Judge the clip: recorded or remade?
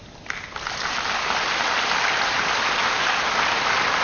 recorded